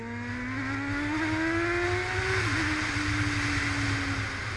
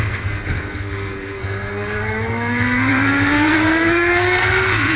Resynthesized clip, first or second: second